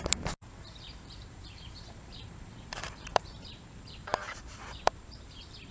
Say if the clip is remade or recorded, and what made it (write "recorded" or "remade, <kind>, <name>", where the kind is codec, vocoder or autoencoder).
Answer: remade, vocoder, BigVGAN v2